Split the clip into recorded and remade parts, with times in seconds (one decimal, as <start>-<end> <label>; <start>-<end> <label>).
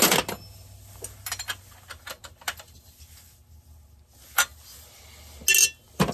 0.0-6.1 recorded